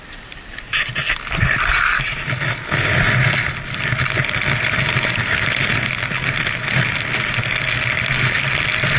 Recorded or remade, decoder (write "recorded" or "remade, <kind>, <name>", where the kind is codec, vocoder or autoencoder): recorded